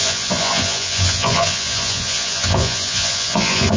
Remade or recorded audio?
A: remade